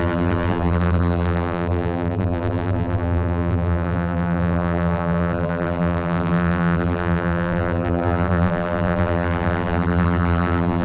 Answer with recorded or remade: remade